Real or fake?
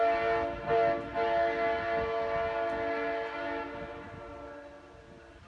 real